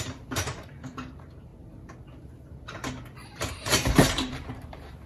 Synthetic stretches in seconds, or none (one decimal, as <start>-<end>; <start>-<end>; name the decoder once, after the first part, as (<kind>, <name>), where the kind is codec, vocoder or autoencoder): 0.0-1.5 (vocoder, BigVGAN v2); 3.5-5.1